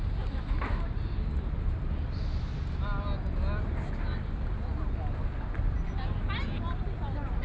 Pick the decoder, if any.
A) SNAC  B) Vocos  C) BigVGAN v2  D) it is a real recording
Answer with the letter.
D